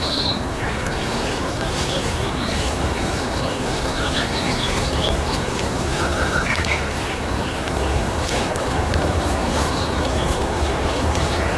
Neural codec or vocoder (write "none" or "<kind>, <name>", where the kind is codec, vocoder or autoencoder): codec, SNAC